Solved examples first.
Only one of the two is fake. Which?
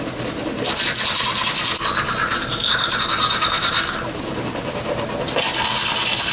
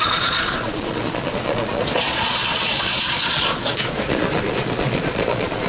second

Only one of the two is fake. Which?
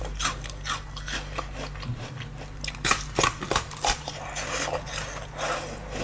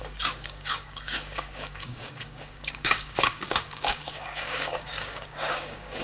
second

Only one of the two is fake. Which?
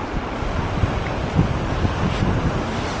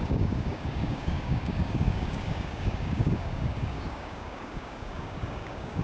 second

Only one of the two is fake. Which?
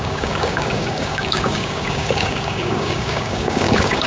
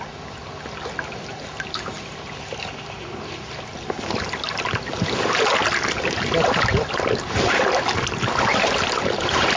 first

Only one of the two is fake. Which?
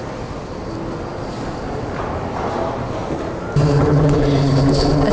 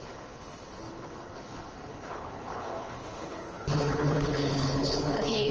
second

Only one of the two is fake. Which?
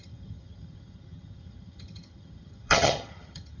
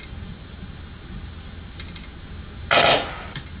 first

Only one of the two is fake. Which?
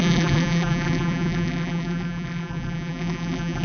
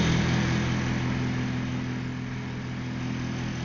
first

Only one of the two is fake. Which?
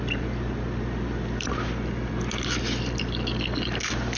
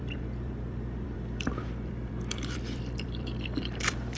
second